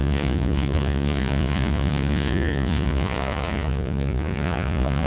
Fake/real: fake